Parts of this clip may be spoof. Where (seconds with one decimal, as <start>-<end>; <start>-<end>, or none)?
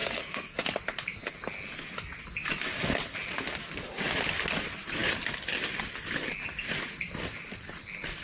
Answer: 0.0-0.6